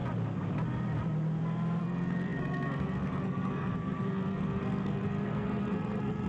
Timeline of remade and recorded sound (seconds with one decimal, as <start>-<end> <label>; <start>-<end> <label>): 0.0-1.8 recorded; 1.8-6.3 remade